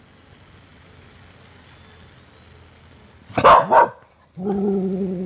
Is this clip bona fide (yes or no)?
yes